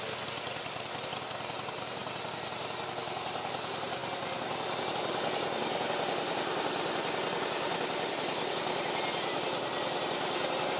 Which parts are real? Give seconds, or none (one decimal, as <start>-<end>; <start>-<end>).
0.0-10.8